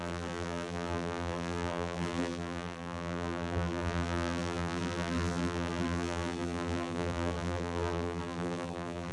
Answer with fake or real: fake